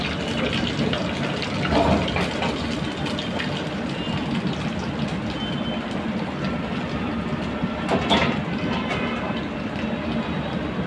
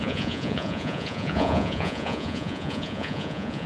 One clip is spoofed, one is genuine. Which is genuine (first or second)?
first